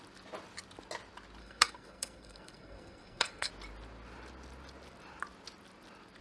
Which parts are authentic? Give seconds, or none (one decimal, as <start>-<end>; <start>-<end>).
0.0-1.4; 3.5-6.2